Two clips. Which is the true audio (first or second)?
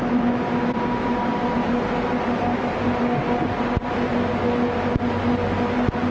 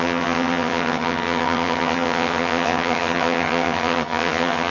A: first